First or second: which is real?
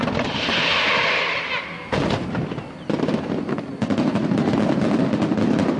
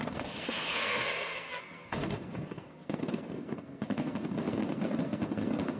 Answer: first